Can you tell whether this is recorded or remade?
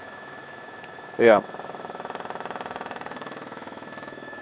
remade